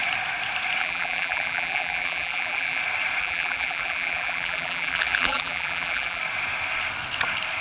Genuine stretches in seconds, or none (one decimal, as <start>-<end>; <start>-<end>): 0.0-0.8; 2.8-3.2; 6.2-7.6

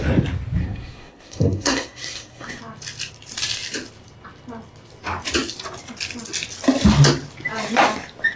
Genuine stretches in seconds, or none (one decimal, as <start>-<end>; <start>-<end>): 0.0-0.6; 2.6-8.4

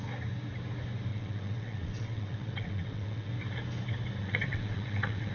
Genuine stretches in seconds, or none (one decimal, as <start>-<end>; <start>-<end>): 0.0-1.1; 3.3-4.2

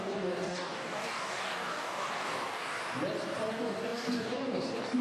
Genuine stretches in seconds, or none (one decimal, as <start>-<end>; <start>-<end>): 2.8-3.5

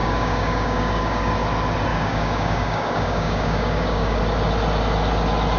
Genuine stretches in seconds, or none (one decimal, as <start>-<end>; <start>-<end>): 1.3-1.9; 4.2-5.6

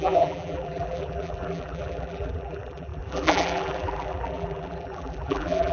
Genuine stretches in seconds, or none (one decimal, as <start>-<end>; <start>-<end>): none

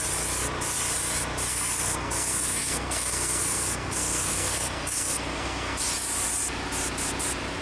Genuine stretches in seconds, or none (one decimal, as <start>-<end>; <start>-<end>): 0.0-1.5; 5.8-7.6

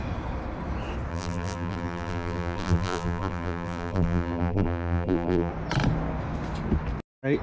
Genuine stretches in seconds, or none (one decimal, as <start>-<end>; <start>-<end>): 0.0-1.1; 5.5-7.4